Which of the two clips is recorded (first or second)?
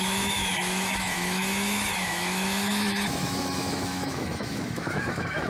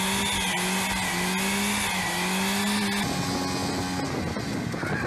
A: second